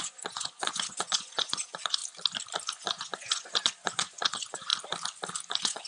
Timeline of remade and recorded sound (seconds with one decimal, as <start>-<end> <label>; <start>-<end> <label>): 0.0-2.0 remade; 2.0-2.7 recorded; 2.7-4.7 remade; 4.7-5.5 recorded; 5.5-5.9 remade